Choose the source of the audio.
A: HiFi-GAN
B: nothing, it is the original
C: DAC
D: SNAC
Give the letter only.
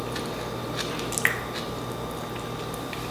B